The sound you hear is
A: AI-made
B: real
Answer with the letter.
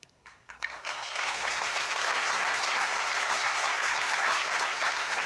A